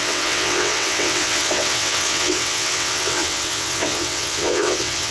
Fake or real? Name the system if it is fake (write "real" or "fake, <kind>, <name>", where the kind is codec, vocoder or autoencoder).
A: fake, vocoder, WaveNeXt